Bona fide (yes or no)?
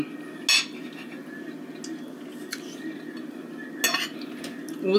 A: yes